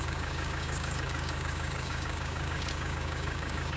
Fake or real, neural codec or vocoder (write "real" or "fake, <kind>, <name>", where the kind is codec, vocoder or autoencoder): fake, codec, DAC